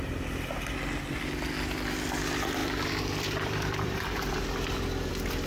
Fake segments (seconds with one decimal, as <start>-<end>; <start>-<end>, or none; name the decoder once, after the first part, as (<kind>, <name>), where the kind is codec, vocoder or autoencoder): 2.6-5.1 (vocoder, BigVGAN v2)